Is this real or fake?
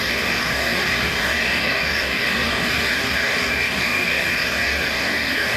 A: fake